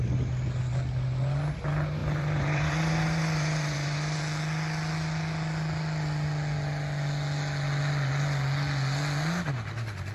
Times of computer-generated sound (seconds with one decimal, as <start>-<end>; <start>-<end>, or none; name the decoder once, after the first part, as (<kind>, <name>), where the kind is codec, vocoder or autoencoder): 2.0-4.2 (vocoder, BigVGAN v2)